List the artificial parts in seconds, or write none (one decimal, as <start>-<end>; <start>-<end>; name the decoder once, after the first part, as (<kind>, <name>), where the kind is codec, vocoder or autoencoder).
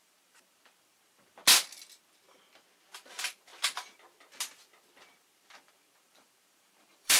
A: 0.0-1.4 (vocoder, BigVGAN v2); 3.1-3.5; 5.2-7.2